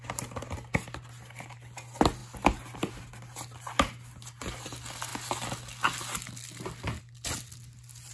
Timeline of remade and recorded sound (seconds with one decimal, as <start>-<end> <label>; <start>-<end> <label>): 0.0-8.1 recorded